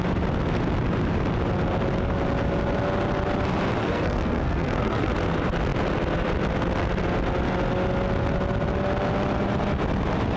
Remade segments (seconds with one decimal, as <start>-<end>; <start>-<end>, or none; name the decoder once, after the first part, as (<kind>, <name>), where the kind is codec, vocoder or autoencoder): 3.8-5.1 (codec, SNAC)